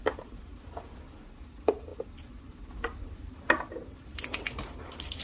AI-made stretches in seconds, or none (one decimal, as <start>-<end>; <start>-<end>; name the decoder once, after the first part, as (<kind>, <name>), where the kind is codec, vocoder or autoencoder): none